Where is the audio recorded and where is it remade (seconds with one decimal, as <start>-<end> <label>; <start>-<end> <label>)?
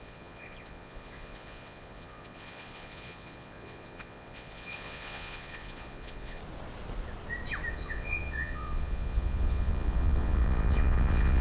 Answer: 0.0-6.4 remade; 6.4-7.7 recorded; 7.7-11.4 remade